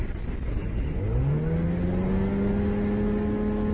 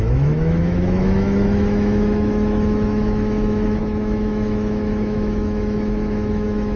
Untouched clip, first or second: first